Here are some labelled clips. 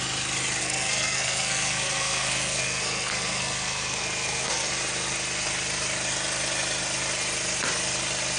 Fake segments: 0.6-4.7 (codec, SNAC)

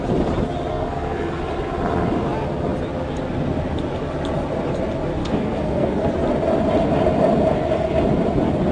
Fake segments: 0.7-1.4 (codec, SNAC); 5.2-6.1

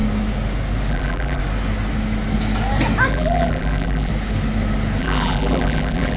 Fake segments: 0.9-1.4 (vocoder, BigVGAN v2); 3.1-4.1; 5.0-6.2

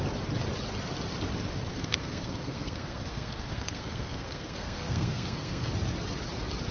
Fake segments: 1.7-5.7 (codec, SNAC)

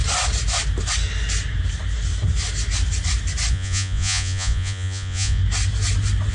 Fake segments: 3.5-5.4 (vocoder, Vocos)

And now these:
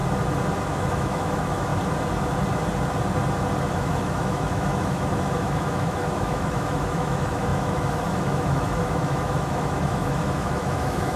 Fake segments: 0.7-1.7 (autoencoder, DAC-VAE); 3.7-11.2

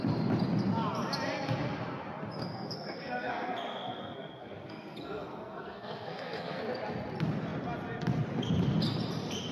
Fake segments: 2.4-6.6 (codec, SNAC)

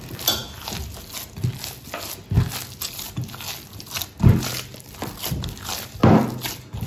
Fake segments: none